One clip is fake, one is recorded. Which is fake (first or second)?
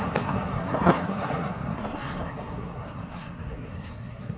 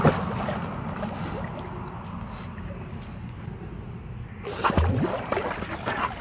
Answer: first